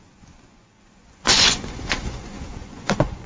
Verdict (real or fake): fake